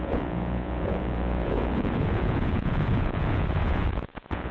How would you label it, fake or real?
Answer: fake